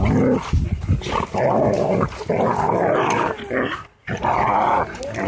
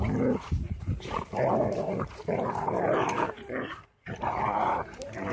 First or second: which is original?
first